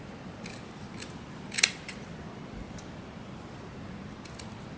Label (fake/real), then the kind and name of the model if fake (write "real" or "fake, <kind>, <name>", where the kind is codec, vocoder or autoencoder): real